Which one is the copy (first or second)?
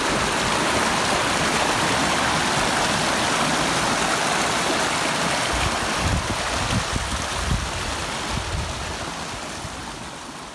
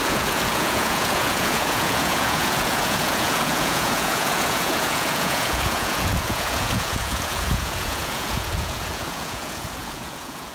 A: second